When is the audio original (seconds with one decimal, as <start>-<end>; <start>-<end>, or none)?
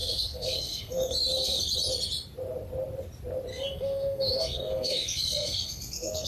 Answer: 1.6-3.5